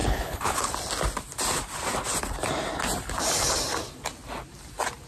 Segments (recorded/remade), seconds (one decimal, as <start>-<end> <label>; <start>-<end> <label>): 0.0-0.7 remade; 0.7-5.1 recorded